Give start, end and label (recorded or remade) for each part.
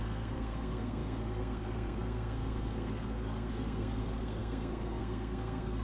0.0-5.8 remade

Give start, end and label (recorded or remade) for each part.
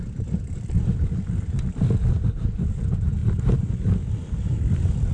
0.0-5.1 recorded